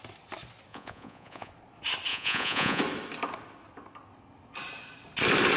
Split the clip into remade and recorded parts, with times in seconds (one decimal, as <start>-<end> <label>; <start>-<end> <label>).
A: 0.0-0.7 recorded; 0.7-1.5 remade; 1.5-2.1 recorded; 2.1-2.8 remade; 2.8-5.6 recorded